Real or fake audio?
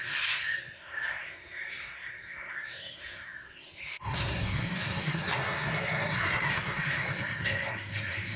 fake